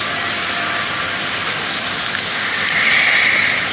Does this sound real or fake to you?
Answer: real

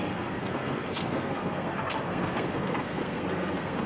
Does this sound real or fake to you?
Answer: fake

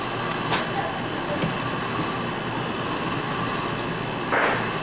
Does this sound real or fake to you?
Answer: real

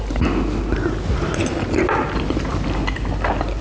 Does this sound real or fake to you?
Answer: real